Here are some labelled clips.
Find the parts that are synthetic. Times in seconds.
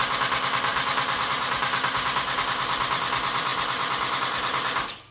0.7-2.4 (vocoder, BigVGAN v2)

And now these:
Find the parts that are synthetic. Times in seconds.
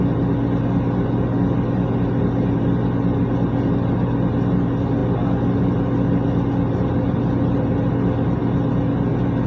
none